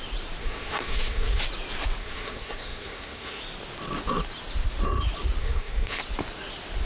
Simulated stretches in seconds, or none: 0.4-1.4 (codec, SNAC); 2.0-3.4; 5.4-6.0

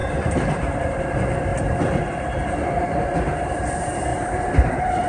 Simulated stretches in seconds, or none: 0.0-1.0 (vocoder, BigVGAN v2); 1.5-2.0; 4.1-5.1